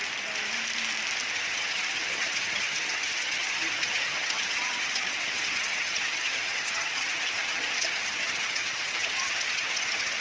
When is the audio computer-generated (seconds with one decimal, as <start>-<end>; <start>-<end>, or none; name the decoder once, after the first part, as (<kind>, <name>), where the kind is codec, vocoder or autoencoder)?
1.3-10.2 (vocoder, HiFi-GAN)